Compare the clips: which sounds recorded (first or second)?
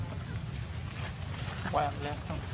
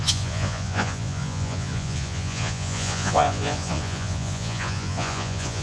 first